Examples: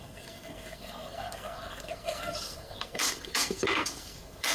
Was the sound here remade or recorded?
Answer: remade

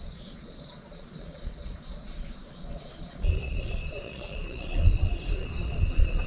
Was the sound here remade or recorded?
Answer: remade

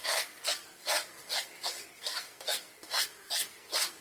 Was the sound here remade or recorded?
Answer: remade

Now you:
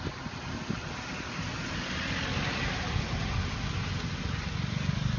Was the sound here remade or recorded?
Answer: recorded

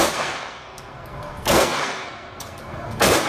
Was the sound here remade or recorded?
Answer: remade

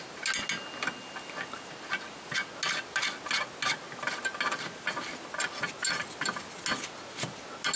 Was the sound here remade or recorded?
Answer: recorded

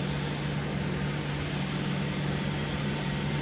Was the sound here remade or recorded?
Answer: recorded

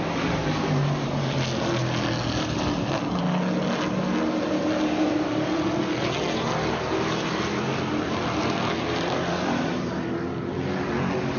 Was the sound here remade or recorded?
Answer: recorded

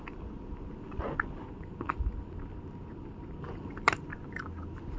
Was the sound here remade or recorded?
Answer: recorded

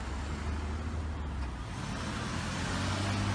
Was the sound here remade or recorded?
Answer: recorded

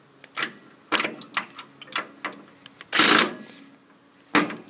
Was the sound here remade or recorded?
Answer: recorded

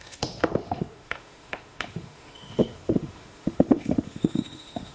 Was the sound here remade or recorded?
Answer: remade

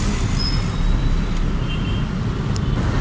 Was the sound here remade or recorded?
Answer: recorded